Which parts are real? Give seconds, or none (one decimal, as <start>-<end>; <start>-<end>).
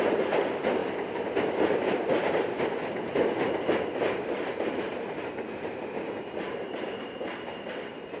0.0-8.2